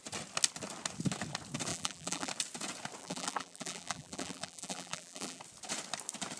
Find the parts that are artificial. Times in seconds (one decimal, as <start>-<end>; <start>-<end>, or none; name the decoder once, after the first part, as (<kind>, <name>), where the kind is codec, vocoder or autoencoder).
1.7-2.3 (vocoder, BigVGAN v2); 3.0-5.4